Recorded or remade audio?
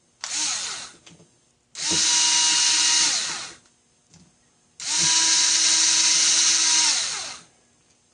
recorded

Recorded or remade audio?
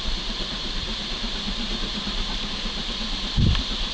remade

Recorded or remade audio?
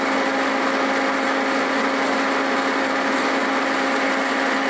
recorded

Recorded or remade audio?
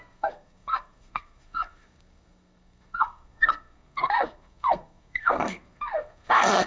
remade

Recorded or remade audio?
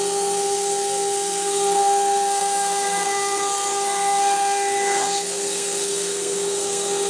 remade